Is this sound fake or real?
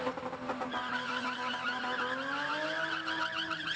real